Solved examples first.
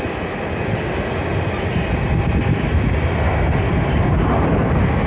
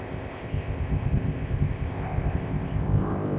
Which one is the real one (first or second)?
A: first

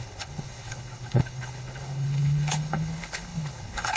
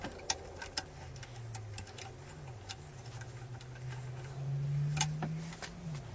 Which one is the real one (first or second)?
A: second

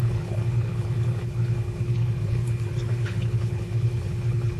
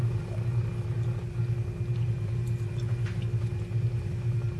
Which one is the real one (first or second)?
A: second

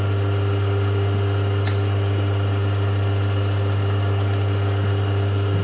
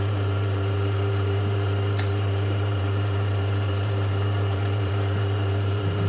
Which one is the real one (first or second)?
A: first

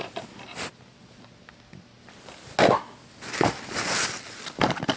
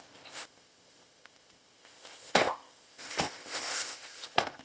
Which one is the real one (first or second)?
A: first